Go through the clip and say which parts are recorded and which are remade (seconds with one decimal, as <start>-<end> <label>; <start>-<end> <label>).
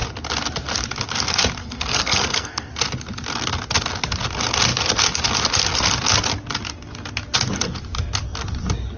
0.0-1.6 recorded; 1.6-2.7 remade; 2.7-9.0 recorded